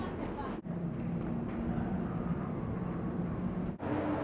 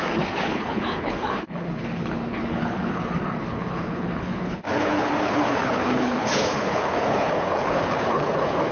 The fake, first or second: second